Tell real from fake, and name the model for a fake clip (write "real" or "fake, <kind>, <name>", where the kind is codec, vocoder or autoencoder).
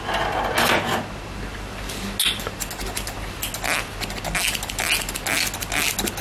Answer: real